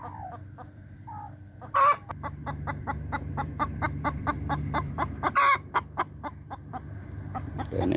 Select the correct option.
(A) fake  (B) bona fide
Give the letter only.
A